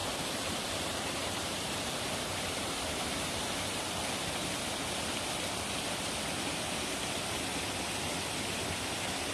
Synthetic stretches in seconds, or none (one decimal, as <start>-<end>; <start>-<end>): 0.0-3.9